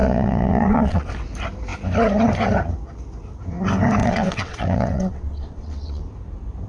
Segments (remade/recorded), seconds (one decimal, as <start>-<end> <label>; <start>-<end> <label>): 0.0-1.1 remade; 1.1-4.0 recorded; 4.0-6.0 remade; 6.0-6.7 recorded